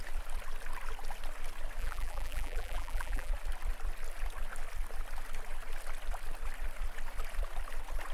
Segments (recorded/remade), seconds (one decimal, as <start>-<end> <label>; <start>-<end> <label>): 0.0-1.8 recorded; 1.8-3.3 remade; 3.3-8.1 recorded